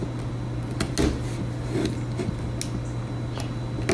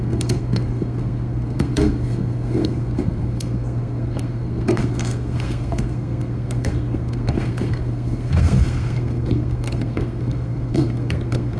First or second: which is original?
first